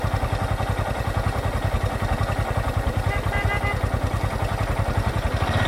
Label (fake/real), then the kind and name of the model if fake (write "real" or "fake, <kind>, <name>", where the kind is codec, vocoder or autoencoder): real